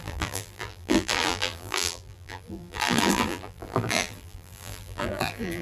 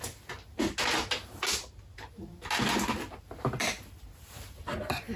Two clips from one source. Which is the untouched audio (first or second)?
second